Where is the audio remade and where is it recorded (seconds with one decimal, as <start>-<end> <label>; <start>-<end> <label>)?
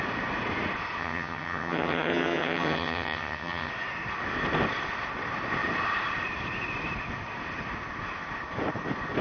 0.0-1.0 recorded; 1.0-3.7 remade; 3.7-9.2 recorded